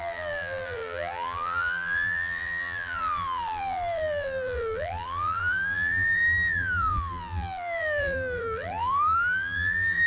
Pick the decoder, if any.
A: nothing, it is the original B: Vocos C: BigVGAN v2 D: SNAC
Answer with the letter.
C